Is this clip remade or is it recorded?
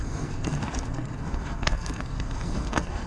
remade